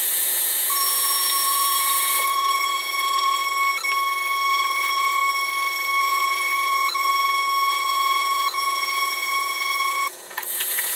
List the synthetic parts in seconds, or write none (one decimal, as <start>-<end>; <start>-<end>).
0.0-3.4; 4.5-5.2; 6.0-7.1; 7.7-11.0